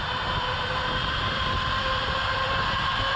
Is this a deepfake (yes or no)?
yes